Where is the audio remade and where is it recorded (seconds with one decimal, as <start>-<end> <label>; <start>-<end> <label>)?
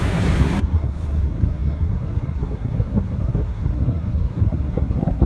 0.0-5.3 remade